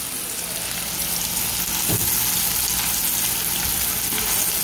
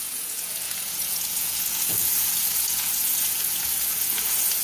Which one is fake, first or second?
second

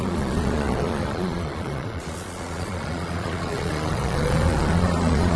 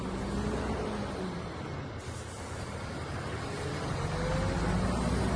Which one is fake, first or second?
first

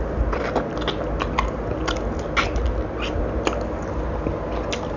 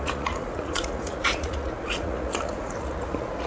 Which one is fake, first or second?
second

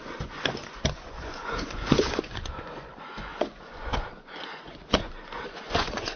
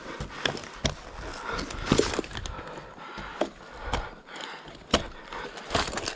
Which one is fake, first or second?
first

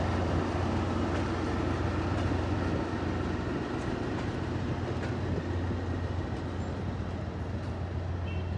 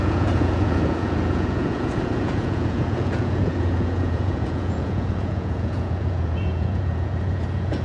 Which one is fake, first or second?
second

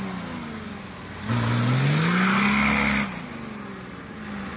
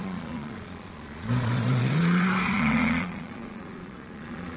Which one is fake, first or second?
second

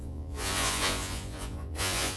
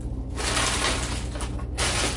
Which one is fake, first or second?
first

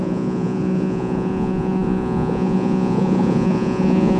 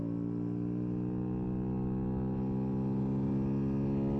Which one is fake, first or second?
first